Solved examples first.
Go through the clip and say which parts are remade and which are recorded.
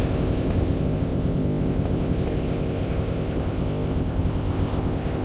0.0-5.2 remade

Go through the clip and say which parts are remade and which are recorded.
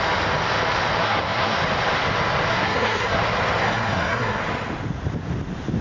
0.0-1.0 recorded; 1.0-1.6 remade; 1.6-2.5 recorded; 2.5-3.2 remade; 3.2-3.6 recorded; 3.6-4.4 remade; 4.4-5.8 recorded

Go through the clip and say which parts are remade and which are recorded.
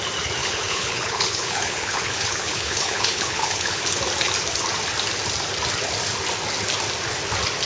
0.0-0.4 recorded; 0.4-3.8 remade; 3.8-7.6 recorded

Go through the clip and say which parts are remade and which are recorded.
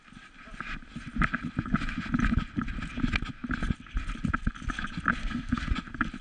0.0-5.2 recorded; 5.2-5.7 remade; 5.7-6.2 recorded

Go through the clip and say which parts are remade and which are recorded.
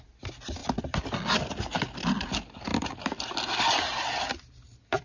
0.0-5.0 recorded